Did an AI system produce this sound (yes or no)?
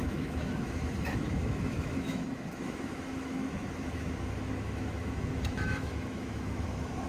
yes